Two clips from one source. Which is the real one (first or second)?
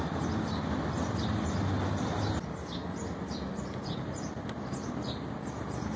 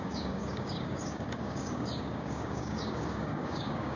first